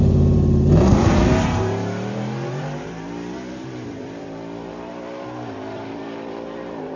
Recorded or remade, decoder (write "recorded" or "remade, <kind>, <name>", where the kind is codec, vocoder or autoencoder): remade, vocoder, BigVGAN v2